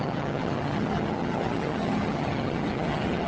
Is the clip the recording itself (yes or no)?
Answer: no